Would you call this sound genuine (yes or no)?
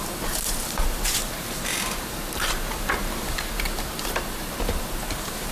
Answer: no